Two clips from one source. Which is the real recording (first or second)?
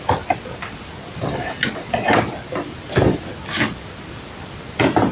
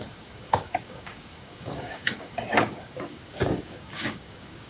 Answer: first